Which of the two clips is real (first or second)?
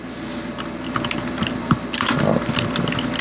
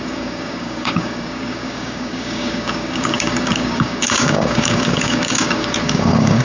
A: first